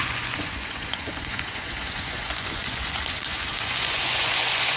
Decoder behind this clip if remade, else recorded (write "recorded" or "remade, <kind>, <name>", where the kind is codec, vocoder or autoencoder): remade, vocoder, Vocos